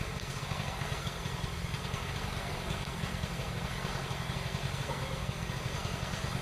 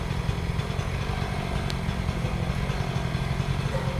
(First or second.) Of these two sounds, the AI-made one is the first